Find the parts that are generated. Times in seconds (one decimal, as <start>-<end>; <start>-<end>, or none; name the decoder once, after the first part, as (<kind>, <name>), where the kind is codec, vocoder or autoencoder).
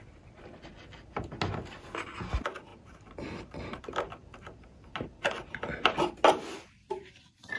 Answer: 2.7-3.8 (vocoder, BigVGAN v2)